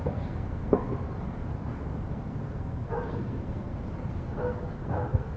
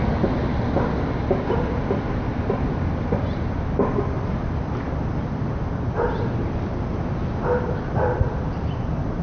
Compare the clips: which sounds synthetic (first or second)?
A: first